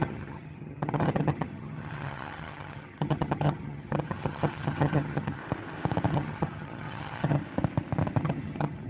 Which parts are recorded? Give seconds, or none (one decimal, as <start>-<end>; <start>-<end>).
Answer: 5.4-6.1; 7.4-8.2